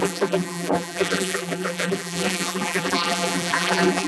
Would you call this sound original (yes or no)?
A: no